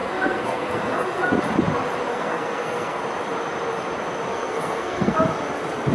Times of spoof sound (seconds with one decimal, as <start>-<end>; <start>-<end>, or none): 0.0-1.3; 2.1-3.0; 4.3-5.2